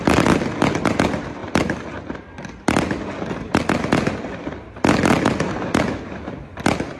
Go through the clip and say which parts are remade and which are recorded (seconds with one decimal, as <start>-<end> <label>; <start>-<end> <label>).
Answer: 0.0-7.0 recorded